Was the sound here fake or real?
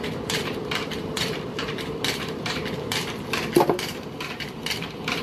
fake